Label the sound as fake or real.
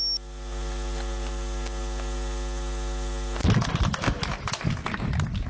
real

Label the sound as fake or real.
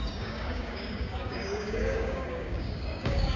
fake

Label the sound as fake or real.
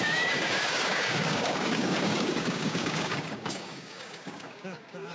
fake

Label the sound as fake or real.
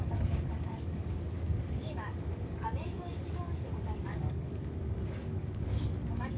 fake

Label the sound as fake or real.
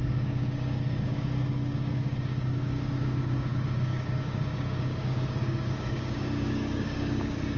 fake